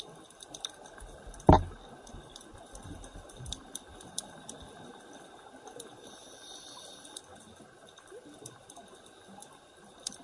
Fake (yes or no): no